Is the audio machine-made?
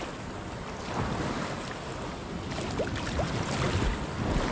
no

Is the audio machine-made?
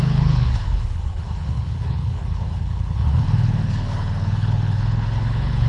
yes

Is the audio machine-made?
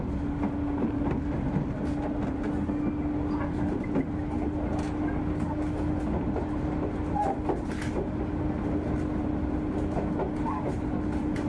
no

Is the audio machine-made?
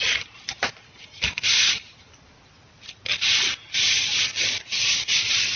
no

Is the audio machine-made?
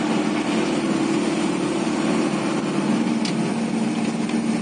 no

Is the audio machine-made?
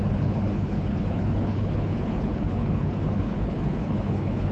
yes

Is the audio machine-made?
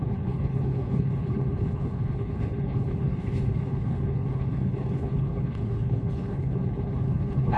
yes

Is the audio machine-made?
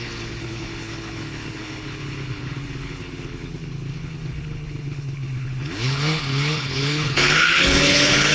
yes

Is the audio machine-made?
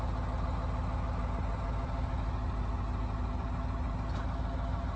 no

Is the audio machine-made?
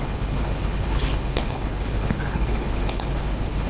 yes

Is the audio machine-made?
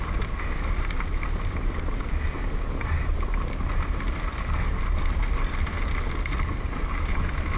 no